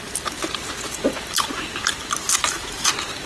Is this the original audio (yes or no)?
yes